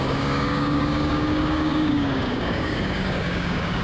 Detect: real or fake fake